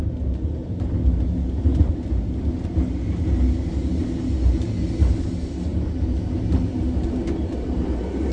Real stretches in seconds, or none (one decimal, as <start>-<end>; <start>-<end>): 0.0-8.3